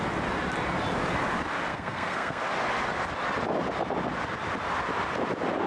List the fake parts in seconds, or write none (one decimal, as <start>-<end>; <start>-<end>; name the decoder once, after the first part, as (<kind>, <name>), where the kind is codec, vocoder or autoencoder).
1.7-2.4 (codec, SNAC)